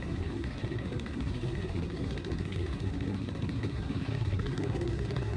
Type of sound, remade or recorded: remade